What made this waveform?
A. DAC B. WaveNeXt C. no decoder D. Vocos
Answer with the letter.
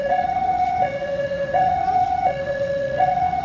B